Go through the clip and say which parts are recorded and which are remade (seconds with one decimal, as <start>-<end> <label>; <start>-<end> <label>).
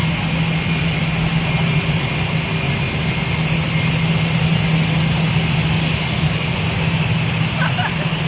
0.0-8.3 recorded